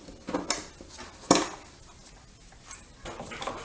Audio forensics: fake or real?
real